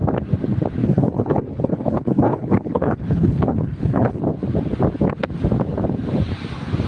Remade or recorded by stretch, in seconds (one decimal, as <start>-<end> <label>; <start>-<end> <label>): 0.0-0.8 recorded; 0.8-4.2 remade; 4.2-6.9 recorded